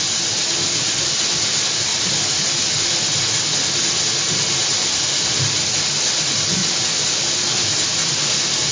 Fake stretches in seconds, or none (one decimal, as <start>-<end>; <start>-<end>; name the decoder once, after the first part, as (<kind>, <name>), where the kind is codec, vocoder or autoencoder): none